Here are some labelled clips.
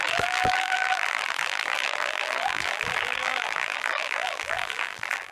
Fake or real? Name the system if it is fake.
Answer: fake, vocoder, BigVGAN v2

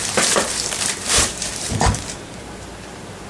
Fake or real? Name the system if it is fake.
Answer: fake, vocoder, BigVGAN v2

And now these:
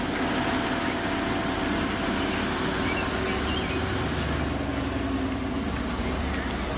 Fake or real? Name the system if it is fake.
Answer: real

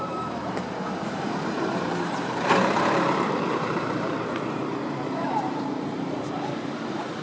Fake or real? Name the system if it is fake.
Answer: fake, vocoder, BigVGAN v2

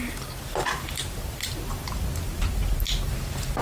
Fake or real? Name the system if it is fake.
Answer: fake, vocoder, BigVGAN v2